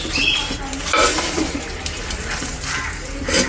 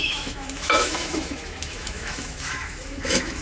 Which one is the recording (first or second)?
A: first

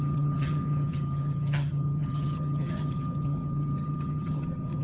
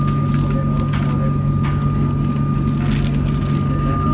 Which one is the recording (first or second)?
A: second